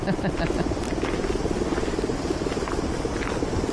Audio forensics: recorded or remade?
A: recorded